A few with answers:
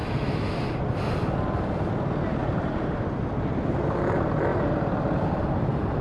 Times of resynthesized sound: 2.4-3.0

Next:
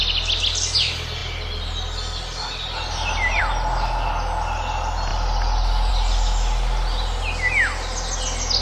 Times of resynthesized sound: none

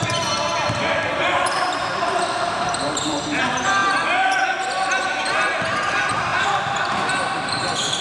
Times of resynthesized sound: 0.0-8.0

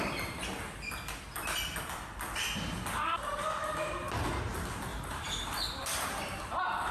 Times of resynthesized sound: 4.9-6.4

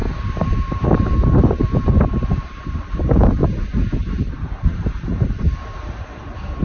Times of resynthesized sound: 0.0-3.4; 4.3-6.6